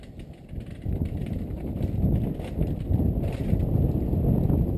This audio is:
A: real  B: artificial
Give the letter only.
A